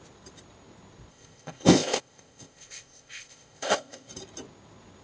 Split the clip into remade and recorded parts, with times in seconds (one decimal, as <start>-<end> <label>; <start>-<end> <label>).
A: 0.0-1.1 recorded; 1.1-4.1 remade; 4.1-5.0 recorded